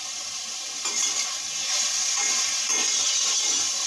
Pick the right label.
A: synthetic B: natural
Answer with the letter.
B